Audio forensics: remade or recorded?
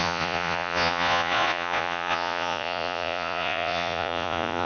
remade